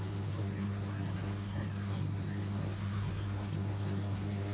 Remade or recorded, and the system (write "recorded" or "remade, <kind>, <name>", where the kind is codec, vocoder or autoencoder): remade, codec, SNAC